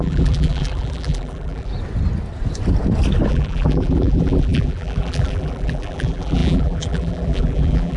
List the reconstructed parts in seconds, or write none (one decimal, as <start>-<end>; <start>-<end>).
0.0-1.7; 3.3-8.0